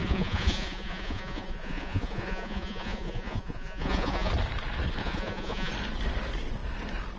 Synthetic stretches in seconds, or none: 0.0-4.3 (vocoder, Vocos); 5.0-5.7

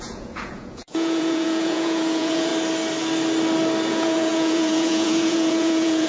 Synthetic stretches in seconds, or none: 0.0-2.5 (vocoder, Vocos); 3.9-6.1

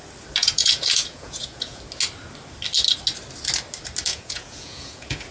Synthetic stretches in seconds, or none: 0.4-1.8 (vocoder, Vocos); 4.1-5.3